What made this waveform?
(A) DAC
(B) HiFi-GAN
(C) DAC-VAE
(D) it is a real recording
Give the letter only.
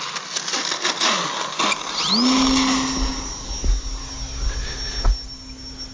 D